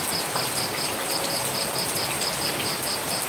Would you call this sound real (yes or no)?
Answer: yes